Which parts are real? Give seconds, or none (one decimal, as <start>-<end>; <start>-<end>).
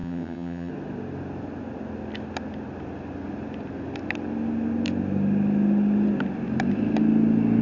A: 0.7-7.6